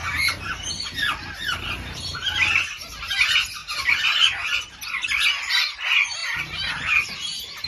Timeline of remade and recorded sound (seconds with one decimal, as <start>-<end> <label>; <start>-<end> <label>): 0.0-6.2 recorded; 6.2-7.1 remade; 7.1-7.7 recorded